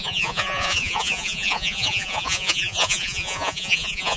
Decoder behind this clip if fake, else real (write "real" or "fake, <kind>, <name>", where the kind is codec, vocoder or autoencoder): fake, vocoder, Vocos